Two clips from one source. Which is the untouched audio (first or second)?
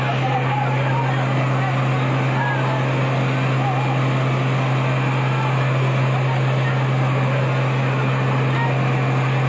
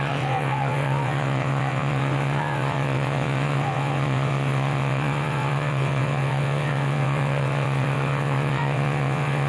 first